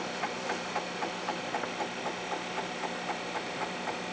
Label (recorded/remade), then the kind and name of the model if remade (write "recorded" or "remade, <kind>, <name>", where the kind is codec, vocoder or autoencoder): recorded